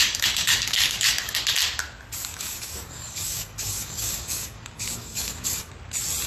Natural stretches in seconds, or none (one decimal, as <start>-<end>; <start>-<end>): 1.2-2.3; 5.7-6.3